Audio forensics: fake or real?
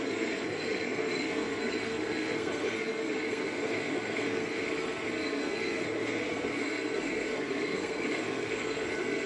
fake